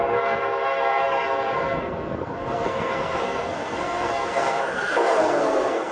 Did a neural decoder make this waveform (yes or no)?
yes